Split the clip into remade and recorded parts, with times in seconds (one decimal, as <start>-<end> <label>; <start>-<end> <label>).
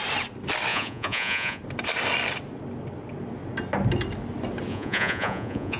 0.0-0.7 recorded; 0.7-1.6 remade; 1.6-4.7 recorded; 4.7-5.8 remade